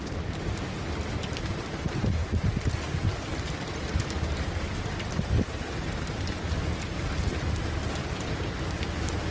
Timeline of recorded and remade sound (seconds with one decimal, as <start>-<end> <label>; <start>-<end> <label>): 0.0-9.3 recorded